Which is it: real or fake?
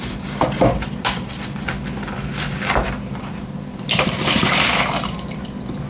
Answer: fake